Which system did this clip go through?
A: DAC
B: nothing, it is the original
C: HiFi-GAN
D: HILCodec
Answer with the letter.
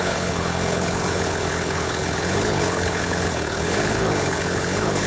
D